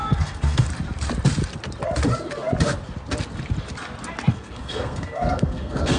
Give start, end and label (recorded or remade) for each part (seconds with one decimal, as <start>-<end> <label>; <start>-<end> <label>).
0.0-0.7 remade; 0.7-4.3 recorded; 4.3-6.0 remade

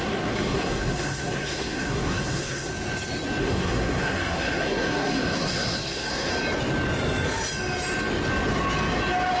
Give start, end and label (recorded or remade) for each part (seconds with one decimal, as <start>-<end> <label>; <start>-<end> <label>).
0.0-2.7 remade; 2.7-3.4 recorded; 3.4-6.3 remade; 6.3-9.4 recorded

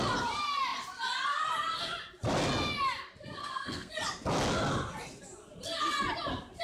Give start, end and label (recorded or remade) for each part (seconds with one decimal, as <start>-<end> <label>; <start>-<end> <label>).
0.0-3.4 recorded; 3.4-3.9 remade; 3.9-6.6 recorded

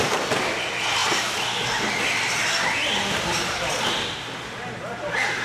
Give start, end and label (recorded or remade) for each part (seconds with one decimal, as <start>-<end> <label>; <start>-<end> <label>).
0.0-5.4 recorded

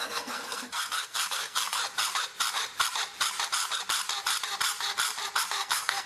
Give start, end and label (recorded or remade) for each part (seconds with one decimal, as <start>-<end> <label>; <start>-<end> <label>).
0.0-1.8 remade; 1.8-5.5 recorded; 5.5-6.1 remade

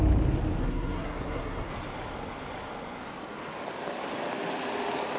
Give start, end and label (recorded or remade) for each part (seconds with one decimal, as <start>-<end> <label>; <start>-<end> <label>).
0.0-0.6 recorded; 0.6-1.7 remade; 1.7-5.2 recorded

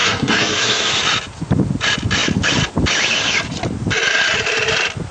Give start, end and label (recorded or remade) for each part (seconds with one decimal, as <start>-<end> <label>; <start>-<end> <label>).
0.0-0.9 remade; 0.9-5.1 recorded

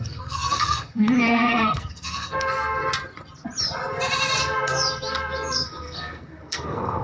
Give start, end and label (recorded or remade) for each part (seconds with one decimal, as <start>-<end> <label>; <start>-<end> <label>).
0.0-2.8 remade; 2.8-4.4 recorded; 4.4-7.0 remade